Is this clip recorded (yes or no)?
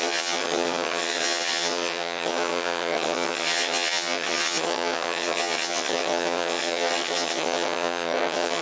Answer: no